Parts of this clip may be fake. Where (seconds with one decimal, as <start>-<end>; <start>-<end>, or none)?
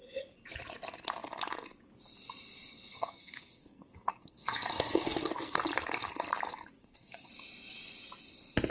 2.9-5.6; 6.8-7.3